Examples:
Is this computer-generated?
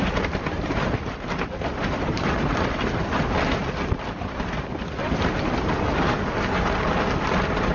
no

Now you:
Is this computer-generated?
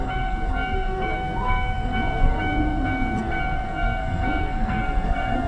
yes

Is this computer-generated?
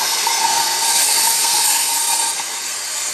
yes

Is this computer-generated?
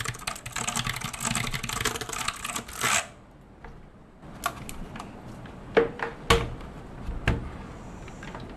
no